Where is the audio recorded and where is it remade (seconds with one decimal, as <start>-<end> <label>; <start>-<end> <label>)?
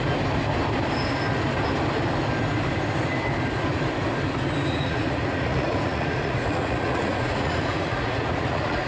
0.0-4.6 recorded; 4.6-8.9 remade